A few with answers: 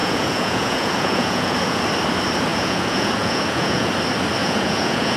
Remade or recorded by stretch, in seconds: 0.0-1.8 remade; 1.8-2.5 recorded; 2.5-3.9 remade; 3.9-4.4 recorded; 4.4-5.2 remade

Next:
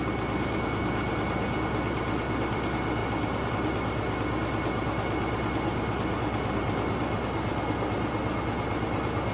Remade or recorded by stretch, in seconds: 0.0-9.3 recorded

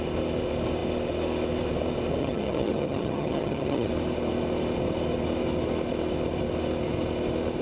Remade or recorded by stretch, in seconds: 0.0-2.2 recorded; 2.2-3.9 remade; 3.9-7.6 recorded

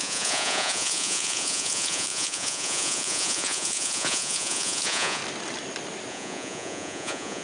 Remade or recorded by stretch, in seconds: 0.0-5.2 remade; 5.2-6.1 recorded; 6.1-7.4 remade